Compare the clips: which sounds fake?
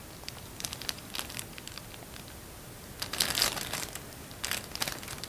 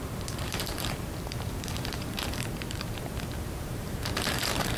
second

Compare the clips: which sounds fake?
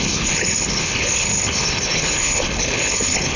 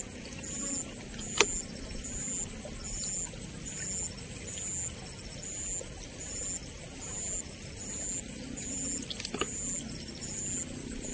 first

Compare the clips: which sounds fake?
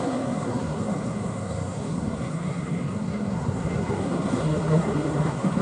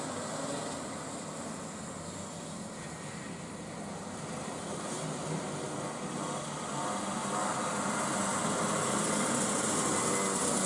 first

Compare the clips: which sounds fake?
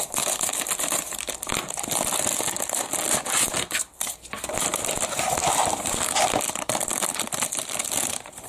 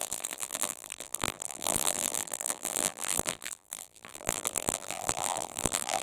second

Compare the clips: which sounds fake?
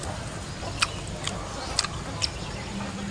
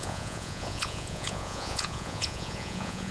second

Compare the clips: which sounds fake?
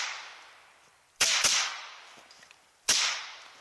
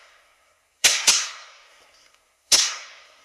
second